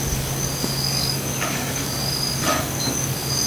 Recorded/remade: remade